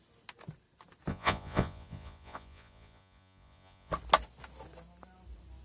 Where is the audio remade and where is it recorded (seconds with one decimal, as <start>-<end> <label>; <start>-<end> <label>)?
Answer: 0.0-1.1 recorded; 1.1-3.9 remade; 3.9-5.6 recorded